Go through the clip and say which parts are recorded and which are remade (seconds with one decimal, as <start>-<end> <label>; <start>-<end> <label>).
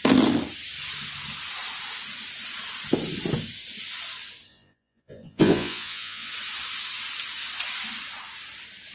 0.0-4.5 recorded; 4.5-6.3 remade; 6.3-8.9 recorded